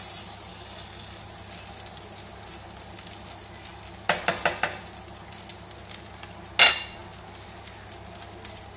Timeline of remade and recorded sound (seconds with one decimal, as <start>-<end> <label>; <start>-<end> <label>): 0.0-0.5 recorded; 0.5-1.2 remade; 1.2-8.8 recorded